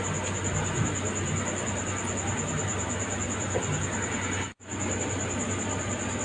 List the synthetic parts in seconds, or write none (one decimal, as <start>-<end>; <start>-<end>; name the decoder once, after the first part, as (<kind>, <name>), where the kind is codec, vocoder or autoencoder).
none